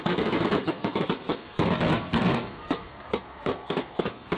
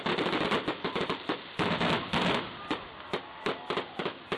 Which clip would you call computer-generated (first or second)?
first